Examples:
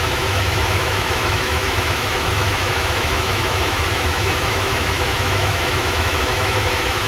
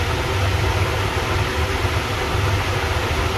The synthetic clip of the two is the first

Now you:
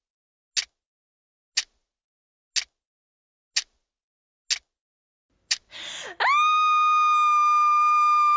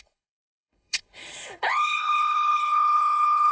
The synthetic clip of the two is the second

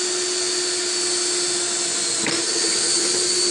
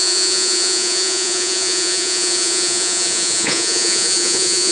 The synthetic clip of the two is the second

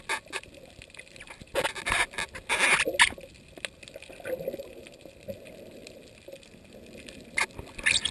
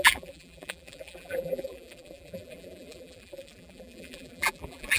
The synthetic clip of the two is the second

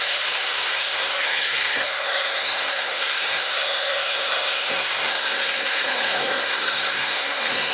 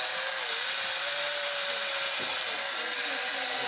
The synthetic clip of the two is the first